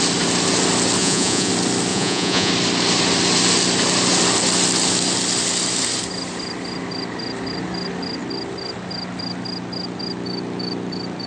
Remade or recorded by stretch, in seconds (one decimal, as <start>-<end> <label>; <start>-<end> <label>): 0.0-1.0 recorded; 1.0-1.5 remade; 1.5-1.9 recorded; 1.9-2.5 remade; 2.5-11.3 recorded